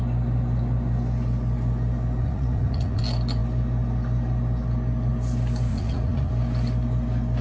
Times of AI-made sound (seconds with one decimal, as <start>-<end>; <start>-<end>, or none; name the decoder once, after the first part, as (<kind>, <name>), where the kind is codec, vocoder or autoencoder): 2.2-3.0 (vocoder, Vocos); 5.7-6.3